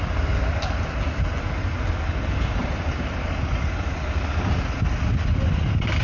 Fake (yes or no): no